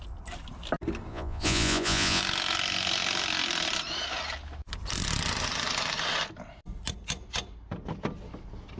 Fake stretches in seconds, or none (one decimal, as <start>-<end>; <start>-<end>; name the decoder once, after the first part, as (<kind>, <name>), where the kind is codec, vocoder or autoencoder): 1.1-2.2 (vocoder, Vocos)